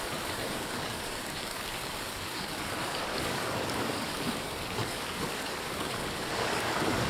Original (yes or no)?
no